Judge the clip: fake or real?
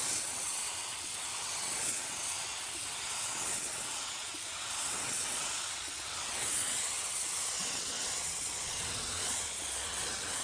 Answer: fake